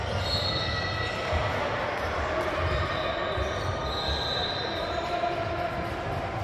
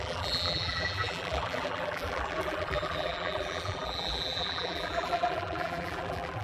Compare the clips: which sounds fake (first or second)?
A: second